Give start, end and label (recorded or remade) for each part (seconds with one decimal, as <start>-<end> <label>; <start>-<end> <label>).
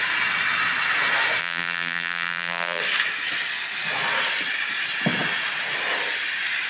0.0-1.4 recorded; 1.4-2.8 remade; 2.8-6.7 recorded